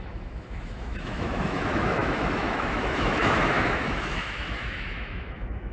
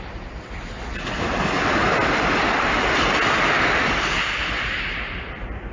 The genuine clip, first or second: second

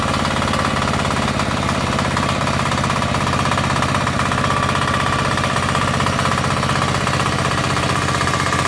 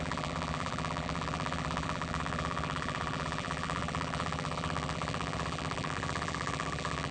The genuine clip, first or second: first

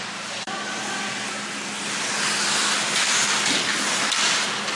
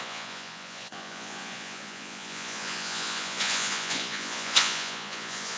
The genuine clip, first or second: first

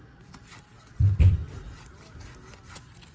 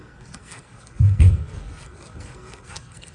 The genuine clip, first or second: first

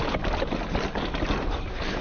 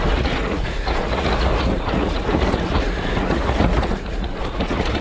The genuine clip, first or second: first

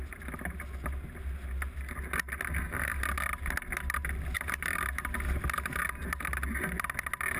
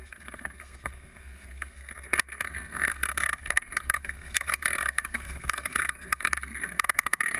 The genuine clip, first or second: first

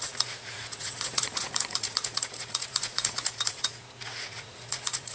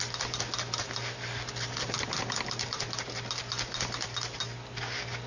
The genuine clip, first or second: second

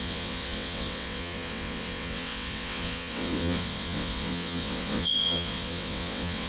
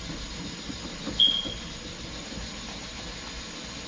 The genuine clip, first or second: second